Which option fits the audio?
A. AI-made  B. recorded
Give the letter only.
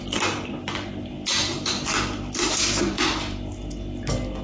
B